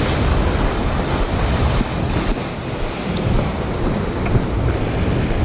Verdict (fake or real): real